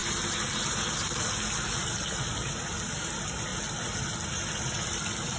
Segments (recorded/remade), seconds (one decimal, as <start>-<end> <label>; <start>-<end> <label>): 0.0-5.4 recorded